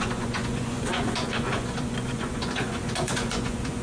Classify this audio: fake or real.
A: fake